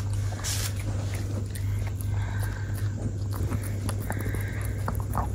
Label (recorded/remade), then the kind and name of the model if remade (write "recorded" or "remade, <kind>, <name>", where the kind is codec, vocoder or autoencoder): recorded